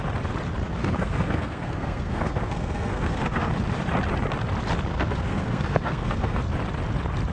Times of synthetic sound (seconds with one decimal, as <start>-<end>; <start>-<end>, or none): 0.8-3.5; 4.9-6.4